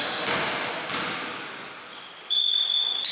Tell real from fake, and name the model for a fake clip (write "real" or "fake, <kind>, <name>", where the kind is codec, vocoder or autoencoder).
real